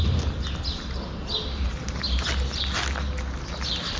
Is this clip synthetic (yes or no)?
no